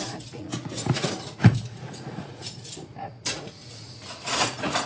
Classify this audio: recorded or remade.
remade